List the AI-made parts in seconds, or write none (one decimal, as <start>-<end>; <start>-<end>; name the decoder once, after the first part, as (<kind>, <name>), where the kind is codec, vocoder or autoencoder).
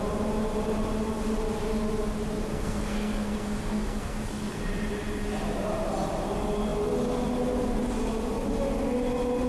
2.5-4.6 (codec, SNAC)